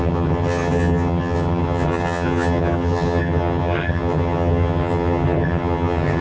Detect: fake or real fake